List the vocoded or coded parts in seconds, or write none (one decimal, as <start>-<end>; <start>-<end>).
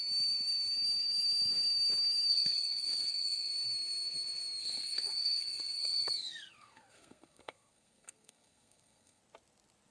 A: 2.3-3.5; 4.6-9.2